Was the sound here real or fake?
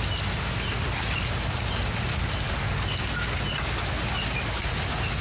real